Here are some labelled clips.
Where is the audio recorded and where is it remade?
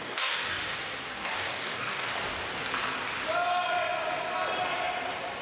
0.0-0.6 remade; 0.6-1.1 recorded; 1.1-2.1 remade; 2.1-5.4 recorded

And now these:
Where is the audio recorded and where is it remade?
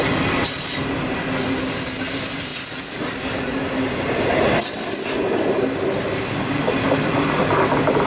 0.0-8.1 recorded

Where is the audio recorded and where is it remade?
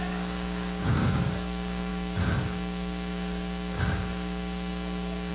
0.0-5.3 remade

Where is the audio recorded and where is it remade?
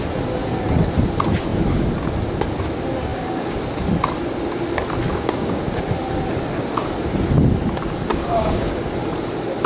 0.0-3.1 recorded; 3.1-3.6 remade; 3.6-5.1 recorded; 5.1-5.8 remade; 5.8-8.1 recorded; 8.1-8.9 remade; 8.9-9.7 recorded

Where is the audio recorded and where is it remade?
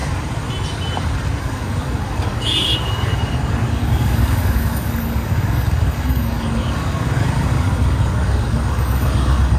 0.0-1.4 recorded; 1.4-9.6 remade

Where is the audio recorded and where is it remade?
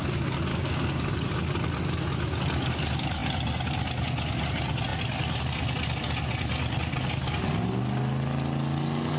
0.0-0.5 recorded; 0.5-1.1 remade; 1.1-9.2 recorded